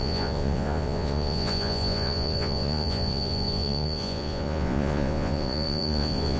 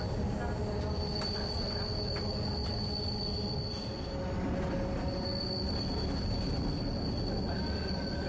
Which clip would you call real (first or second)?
second